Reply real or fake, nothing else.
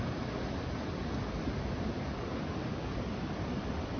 fake